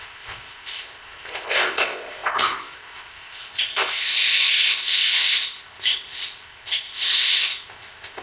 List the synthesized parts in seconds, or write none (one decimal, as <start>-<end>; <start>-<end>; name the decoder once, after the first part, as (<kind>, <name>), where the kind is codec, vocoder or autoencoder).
0.0-8.2 (codec, ZipCodec)